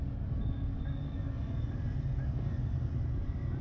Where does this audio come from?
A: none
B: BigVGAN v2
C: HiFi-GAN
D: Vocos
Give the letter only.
A